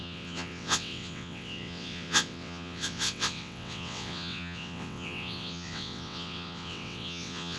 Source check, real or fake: fake